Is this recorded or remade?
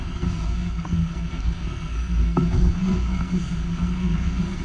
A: remade